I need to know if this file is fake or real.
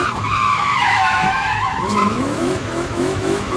fake